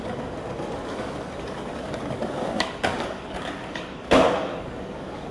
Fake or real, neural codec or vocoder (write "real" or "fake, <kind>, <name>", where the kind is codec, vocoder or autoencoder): fake, codec, DAC